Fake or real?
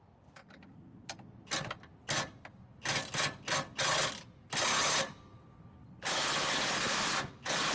real